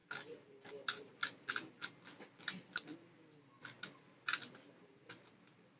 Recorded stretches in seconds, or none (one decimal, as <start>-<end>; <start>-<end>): 0.0-0.7; 1.2-4.7